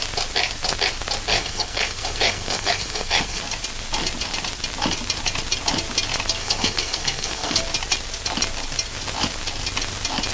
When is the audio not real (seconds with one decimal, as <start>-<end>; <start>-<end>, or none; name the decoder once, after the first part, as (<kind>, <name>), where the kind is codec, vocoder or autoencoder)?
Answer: 1.3-3.4 (codec, SNAC); 6.4-7.6

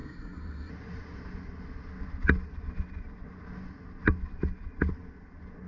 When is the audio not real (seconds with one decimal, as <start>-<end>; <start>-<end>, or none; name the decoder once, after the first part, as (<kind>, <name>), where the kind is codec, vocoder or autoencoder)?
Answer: 0.0-0.7 (codec, SNAC)

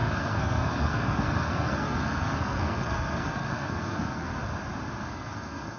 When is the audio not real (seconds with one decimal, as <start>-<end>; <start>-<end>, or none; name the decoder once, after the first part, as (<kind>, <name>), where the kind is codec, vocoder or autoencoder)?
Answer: 0.0-4.4 (codec, SNAC); 5.0-5.8

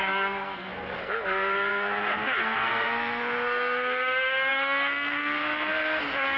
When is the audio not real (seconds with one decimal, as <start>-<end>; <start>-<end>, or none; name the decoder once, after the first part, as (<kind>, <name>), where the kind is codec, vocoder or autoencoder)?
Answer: 0.0-6.4 (codec, SNAC)